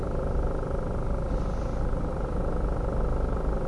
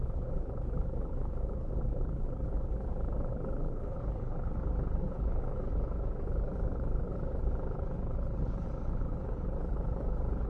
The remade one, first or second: second